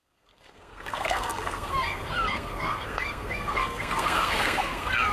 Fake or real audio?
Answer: fake